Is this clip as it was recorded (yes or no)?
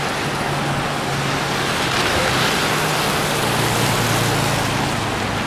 yes